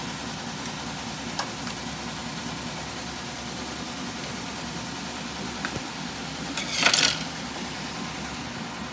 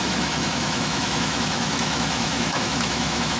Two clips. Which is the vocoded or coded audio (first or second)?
second